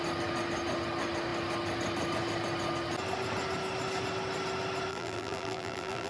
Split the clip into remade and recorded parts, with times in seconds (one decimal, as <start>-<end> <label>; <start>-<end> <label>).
0.0-4.9 recorded; 4.9-6.1 remade